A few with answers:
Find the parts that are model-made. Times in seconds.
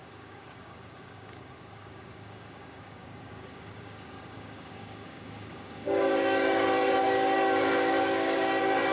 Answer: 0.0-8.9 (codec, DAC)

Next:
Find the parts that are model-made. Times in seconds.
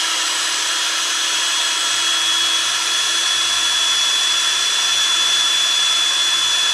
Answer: none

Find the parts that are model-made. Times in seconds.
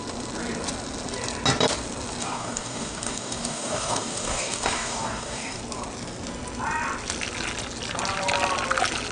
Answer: 2.2-5.6 (codec, DAC)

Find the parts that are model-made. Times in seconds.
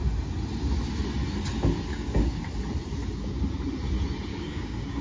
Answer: 1.9-2.4 (codec, DAC); 4.3-5.0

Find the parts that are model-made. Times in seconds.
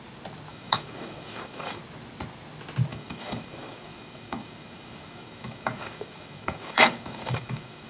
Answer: 0.5-1.8 (codec, DAC); 2.9-7.9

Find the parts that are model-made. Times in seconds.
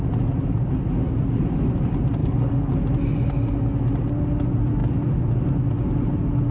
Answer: 2.2-2.7 (codec, DAC)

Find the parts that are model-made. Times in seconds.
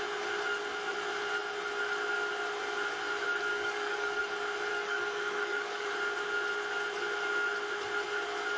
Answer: 3.5-4.2 (codec, DAC); 4.7-5.9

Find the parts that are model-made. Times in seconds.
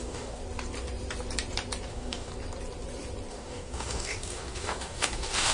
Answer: 0.0-0.4 (codec, DAC); 1.9-2.3; 3.3-5.5